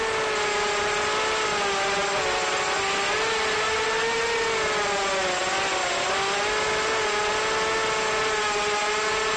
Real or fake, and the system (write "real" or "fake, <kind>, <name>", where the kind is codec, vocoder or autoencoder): real